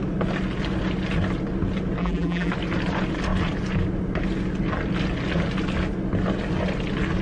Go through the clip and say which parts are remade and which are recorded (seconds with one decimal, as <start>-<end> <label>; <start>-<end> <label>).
0.0-2.0 recorded; 2.0-2.5 remade; 2.5-7.2 recorded